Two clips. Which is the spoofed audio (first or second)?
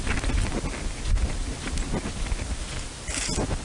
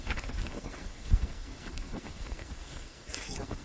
second